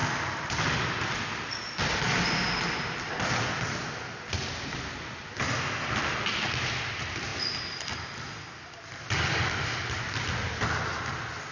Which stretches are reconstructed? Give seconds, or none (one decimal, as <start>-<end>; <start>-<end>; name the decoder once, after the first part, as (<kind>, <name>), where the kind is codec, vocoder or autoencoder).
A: none